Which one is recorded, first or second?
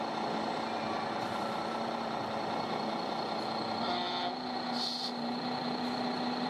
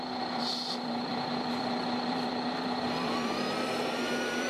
first